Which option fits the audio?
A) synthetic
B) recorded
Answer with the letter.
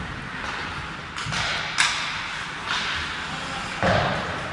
B